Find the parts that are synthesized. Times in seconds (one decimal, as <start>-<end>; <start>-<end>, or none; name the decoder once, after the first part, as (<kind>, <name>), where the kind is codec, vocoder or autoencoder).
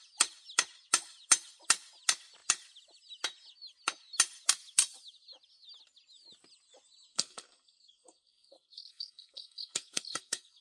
7.1-10.6 (codec, SNAC)